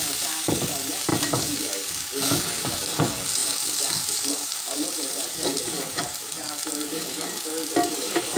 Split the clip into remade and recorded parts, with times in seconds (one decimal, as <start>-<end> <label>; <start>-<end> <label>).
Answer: 0.0-8.4 remade